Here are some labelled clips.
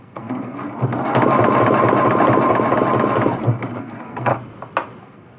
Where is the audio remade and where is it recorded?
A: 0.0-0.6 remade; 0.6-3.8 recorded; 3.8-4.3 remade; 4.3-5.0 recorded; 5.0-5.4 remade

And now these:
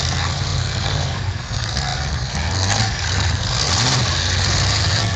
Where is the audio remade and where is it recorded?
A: 0.0-3.7 remade; 3.7-4.2 recorded; 4.2-5.2 remade

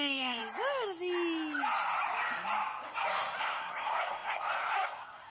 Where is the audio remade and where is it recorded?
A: 0.0-0.4 remade; 0.4-3.4 recorded; 3.4-5.3 remade